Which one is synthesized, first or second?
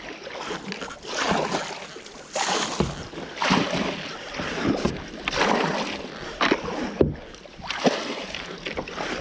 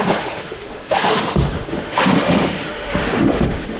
second